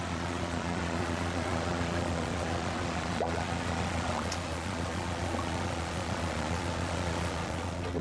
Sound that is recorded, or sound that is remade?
remade